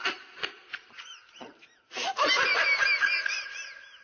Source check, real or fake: fake